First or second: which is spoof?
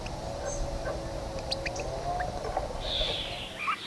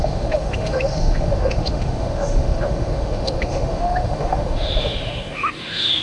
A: second